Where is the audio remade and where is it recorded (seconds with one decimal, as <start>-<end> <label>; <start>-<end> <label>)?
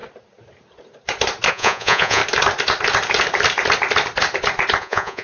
0.0-1.5 recorded; 1.5-2.2 remade; 2.2-4.8 recorded; 4.8-5.2 remade